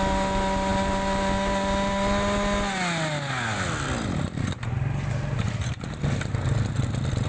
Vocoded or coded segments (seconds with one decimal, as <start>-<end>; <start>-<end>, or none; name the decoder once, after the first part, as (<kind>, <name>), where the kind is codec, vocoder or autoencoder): none